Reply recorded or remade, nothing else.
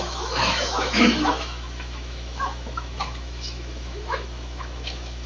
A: remade